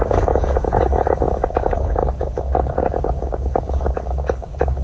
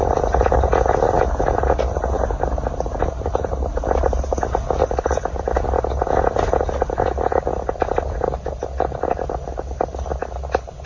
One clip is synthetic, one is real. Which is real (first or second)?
second